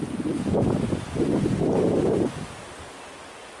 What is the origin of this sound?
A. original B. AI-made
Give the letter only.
A